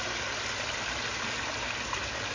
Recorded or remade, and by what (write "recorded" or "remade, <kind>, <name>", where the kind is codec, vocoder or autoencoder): recorded